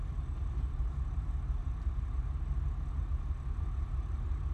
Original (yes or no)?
no